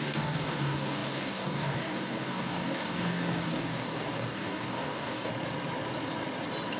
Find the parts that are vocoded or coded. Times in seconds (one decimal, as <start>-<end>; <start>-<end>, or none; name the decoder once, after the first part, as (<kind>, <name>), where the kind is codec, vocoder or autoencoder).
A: 0.0-5.3 (codec, DAC)